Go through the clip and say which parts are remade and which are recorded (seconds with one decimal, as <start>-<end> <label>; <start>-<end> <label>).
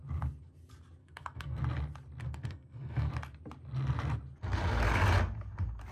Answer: 0.0-1.0 recorded; 1.0-1.6 remade; 1.6-2.2 recorded; 2.2-3.1 remade; 3.1-5.9 recorded